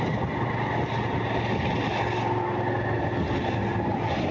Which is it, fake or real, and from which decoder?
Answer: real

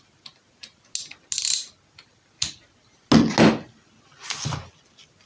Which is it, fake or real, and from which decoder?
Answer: real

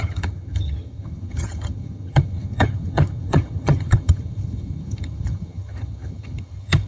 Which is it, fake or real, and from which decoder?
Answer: fake, vocoder, HiFi-GAN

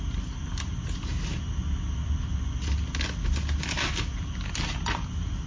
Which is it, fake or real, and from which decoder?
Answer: real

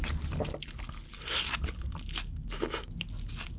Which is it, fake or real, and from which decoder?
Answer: real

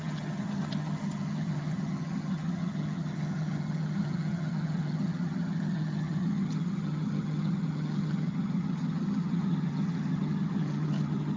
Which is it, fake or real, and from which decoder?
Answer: fake, vocoder, HiFi-GAN